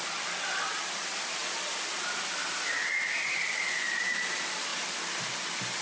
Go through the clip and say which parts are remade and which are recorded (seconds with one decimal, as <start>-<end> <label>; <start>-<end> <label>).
0.0-4.7 remade; 4.7-5.8 recorded

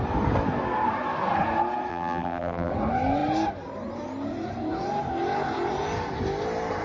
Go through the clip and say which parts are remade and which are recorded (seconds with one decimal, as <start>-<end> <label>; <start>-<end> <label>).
0.0-1.9 recorded; 1.9-2.7 remade; 2.7-6.8 recorded

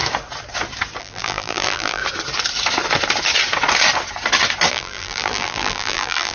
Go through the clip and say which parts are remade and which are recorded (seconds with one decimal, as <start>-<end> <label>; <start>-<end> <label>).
0.0-1.0 recorded; 1.0-2.0 remade; 2.0-4.7 recorded; 4.7-6.3 remade